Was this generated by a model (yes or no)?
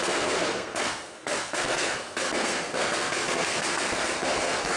yes